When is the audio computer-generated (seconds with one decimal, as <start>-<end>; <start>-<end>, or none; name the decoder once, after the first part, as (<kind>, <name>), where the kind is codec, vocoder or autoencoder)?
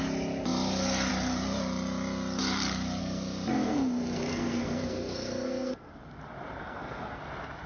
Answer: 3.0-5.9 (codec, SNAC); 6.6-7.2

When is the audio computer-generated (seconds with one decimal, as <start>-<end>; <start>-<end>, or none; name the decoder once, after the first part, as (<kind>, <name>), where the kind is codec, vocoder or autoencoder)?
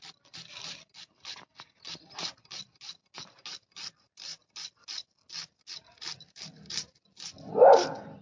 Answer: none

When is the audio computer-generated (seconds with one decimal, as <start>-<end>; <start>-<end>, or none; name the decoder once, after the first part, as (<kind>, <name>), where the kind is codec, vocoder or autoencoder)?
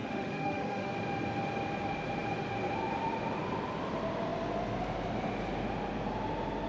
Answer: 0.0-0.9 (autoencoder, DAC-VAE)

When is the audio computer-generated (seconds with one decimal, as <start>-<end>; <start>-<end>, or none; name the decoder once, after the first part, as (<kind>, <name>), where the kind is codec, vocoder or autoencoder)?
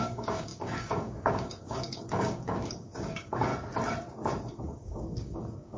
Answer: 0.0-3.5 (codec, DAC); 4.6-5.8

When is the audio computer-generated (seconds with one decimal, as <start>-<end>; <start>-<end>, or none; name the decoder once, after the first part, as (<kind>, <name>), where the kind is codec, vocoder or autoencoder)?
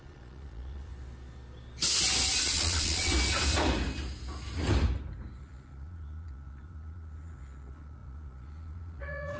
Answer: 0.0-0.9 (vocoder, Vocos); 2.3-3.1; 5.4-9.4